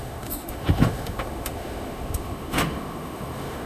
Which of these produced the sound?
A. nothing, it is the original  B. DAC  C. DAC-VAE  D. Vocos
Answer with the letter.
C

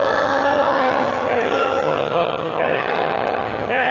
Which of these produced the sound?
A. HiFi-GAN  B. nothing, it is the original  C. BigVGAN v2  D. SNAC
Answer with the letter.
A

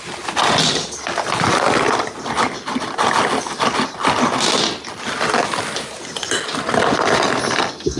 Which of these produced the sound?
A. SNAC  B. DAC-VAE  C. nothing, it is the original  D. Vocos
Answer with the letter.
C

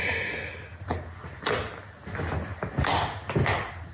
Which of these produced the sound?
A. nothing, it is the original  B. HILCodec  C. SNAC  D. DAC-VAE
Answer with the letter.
A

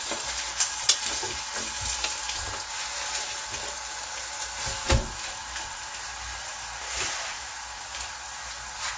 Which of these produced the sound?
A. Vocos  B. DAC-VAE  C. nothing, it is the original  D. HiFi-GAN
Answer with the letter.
C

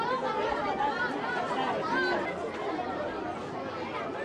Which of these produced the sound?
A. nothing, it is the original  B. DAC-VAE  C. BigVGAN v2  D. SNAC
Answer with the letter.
A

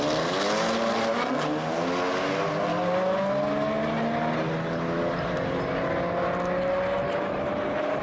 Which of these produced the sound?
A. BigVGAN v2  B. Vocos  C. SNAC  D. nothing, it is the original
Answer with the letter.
D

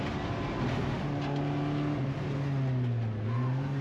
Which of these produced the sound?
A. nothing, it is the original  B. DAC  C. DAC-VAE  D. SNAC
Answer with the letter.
A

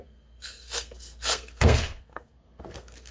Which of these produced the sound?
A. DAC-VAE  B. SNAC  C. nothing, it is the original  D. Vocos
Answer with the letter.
B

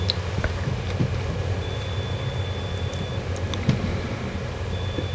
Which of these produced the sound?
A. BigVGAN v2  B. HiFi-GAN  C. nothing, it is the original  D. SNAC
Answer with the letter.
C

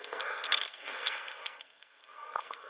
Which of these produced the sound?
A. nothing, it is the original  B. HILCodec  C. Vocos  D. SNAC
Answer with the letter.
D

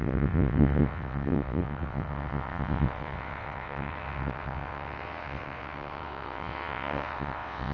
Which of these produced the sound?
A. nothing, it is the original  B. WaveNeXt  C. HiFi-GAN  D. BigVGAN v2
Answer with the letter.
B